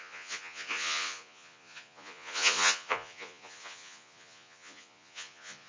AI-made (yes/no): yes